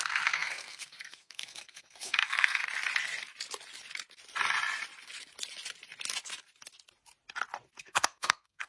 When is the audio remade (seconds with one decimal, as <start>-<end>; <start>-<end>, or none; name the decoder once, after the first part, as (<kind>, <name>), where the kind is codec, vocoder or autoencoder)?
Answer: 0.0-2.6 (codec, SNAC); 7.8-8.7